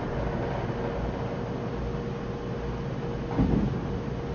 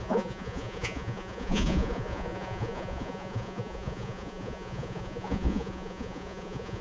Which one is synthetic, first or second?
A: second